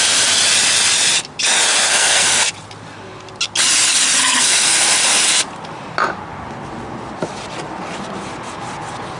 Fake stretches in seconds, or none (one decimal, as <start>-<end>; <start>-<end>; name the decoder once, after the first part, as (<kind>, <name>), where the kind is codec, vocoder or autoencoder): 1.9-2.5 (codec, SNAC); 4.2-5.0